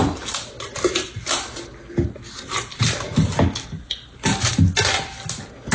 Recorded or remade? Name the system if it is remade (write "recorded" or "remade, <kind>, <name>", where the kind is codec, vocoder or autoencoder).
recorded